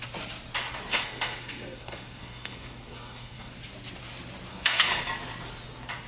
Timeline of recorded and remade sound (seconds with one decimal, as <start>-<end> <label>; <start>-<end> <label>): 0.0-0.9 recorded; 0.9-3.5 remade; 3.5-4.5 recorded; 4.5-5.0 remade; 5.0-6.1 recorded